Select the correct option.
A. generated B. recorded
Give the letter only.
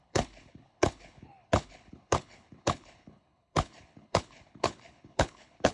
A